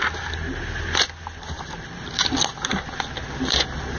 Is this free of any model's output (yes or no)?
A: yes